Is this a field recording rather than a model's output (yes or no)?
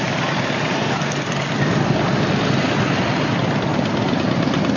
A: yes